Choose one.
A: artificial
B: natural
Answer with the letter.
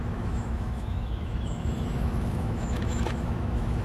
A